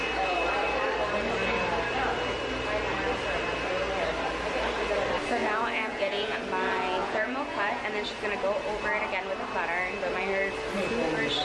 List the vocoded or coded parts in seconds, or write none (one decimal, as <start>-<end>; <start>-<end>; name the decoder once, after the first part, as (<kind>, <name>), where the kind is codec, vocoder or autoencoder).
5.4-6.4 (vocoder, Vocos); 7.0-7.8